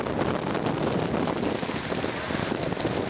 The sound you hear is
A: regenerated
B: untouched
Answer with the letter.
B